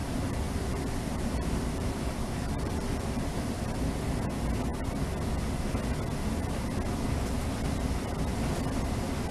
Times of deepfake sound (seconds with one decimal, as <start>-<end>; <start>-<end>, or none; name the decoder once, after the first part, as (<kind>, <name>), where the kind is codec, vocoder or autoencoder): 0.0-3.8 (vocoder, BigVGAN v2)